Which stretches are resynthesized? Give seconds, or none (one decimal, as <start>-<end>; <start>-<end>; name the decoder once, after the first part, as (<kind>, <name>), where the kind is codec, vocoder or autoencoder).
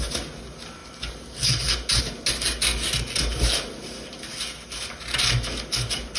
none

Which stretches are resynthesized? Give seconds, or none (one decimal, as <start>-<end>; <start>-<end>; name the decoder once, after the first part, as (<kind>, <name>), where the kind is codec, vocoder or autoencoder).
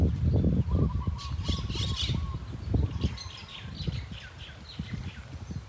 none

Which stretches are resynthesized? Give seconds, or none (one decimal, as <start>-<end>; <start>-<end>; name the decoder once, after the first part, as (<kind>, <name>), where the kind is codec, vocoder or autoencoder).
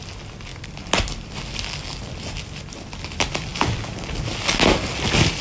0.5-1.3 (vocoder, BigVGAN v2)